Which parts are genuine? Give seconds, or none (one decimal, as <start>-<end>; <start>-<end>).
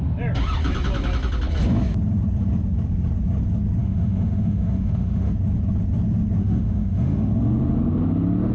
0.0-3.8; 5.3-6.4; 7.3-8.5